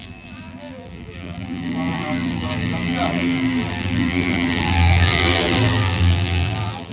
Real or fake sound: fake